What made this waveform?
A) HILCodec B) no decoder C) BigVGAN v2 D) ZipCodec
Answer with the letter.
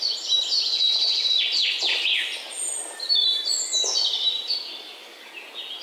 B